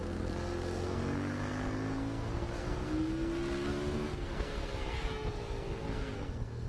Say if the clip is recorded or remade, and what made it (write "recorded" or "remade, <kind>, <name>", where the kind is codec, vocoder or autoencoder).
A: remade, codec, SNAC